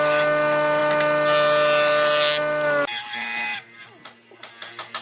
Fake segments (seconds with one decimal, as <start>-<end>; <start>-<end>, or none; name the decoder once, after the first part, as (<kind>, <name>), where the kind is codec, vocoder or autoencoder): none